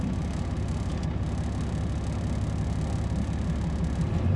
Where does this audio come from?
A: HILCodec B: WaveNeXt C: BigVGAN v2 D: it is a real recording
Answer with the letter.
D